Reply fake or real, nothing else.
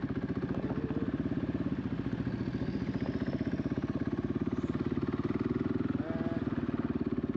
real